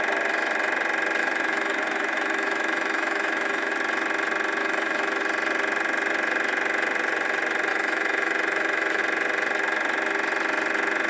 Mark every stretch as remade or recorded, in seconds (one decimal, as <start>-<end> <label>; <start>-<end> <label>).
0.0-1.2 recorded; 1.2-3.7 remade; 3.7-4.6 recorded; 4.6-5.2 remade; 5.2-7.7 recorded; 7.7-9.0 remade; 9.0-11.1 recorded